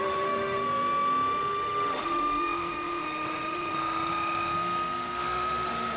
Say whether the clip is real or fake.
fake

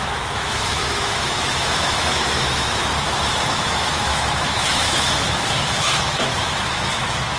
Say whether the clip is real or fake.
fake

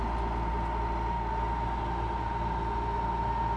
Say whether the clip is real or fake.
real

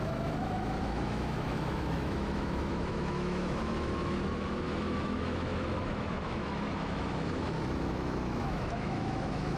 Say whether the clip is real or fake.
fake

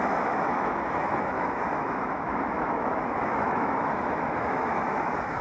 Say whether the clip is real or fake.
fake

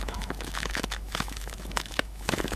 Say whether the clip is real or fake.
fake